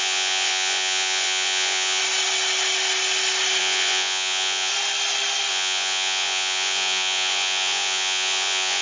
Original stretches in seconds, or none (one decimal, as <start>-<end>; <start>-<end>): 2.0-3.6; 4.7-5.5